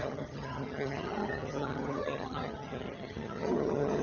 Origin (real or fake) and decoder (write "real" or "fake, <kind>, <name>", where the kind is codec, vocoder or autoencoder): fake, vocoder, HiFi-GAN